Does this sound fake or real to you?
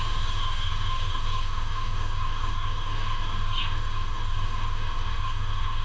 fake